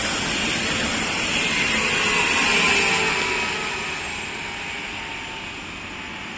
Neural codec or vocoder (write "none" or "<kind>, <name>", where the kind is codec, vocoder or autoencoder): none